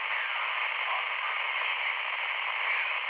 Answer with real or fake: real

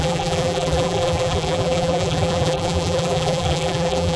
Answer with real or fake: fake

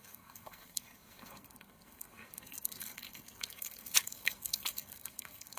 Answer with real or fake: fake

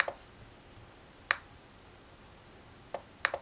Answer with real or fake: real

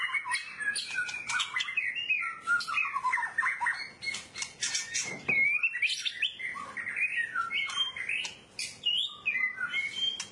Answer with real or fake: real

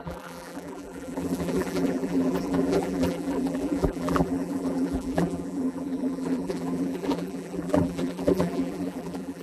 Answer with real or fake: fake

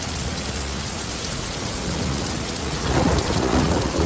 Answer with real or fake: fake